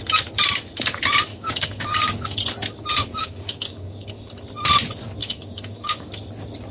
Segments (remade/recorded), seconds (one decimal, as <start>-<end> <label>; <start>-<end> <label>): 0.0-1.3 recorded; 1.3-2.4 remade; 2.4-3.2 recorded; 3.2-4.3 remade; 4.3-5.2 recorded; 5.2-6.1 remade; 6.1-6.7 recorded